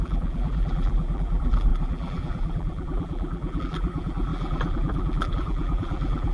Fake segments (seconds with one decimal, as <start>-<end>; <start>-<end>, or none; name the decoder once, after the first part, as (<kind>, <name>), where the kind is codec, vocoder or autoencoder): 0.0-6.3 (vocoder, BigVGAN v2)